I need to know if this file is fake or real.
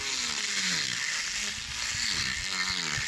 real